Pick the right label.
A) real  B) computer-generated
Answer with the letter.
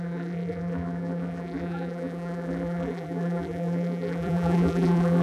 B